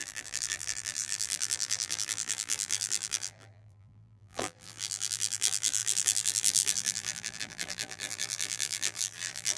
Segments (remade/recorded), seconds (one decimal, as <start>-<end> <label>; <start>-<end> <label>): 0.0-9.6 remade

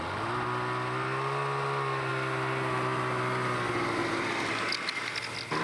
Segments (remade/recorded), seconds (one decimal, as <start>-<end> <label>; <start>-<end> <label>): 0.0-5.6 recorded

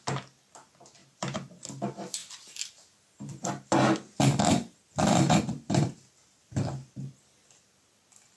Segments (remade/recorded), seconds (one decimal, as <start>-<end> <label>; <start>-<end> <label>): 0.0-1.0 recorded; 1.0-1.5 remade; 1.5-2.2 recorded; 2.2-7.2 remade; 7.2-8.4 recorded

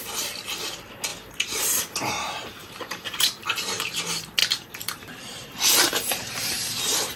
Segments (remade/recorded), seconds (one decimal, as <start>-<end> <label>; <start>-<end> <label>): 0.0-2.6 recorded; 2.6-4.0 remade; 4.0-4.4 recorded; 4.4-6.8 remade; 6.8-7.2 recorded

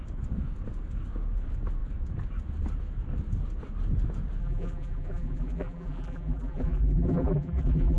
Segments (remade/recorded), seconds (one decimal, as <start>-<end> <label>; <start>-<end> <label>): 0.0-4.4 recorded; 4.4-8.0 remade